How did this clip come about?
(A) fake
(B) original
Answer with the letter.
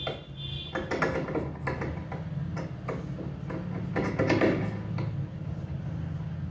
B